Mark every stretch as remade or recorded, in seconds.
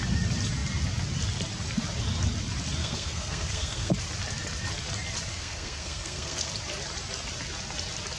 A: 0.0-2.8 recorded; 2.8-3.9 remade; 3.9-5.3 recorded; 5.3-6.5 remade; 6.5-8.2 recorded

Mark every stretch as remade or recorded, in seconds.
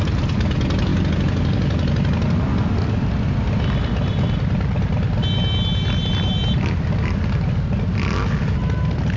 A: 0.0-9.2 recorded